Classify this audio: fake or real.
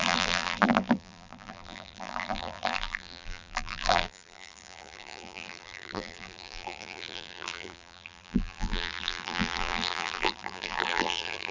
fake